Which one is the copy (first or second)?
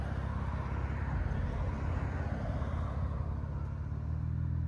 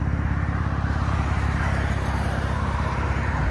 second